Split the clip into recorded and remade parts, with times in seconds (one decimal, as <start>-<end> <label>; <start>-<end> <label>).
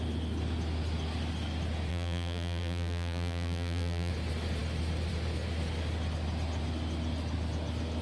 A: 0.0-1.9 recorded; 1.9-4.1 remade; 4.1-8.0 recorded